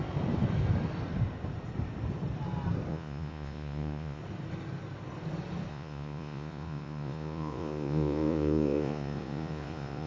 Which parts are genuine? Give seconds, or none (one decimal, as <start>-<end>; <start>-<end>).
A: 0.0-2.9; 4.2-5.7